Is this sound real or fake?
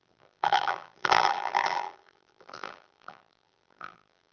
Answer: fake